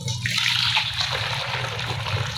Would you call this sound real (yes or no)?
yes